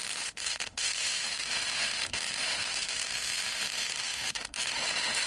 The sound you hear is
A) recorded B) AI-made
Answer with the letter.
B